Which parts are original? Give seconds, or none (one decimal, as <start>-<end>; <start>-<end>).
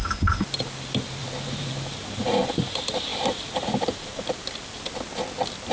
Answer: 0.0-1.2; 2.4-3.1; 5.0-5.7